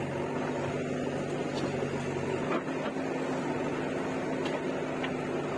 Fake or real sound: real